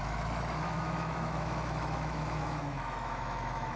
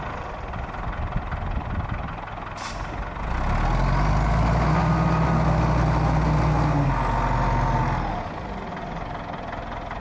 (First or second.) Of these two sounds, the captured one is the second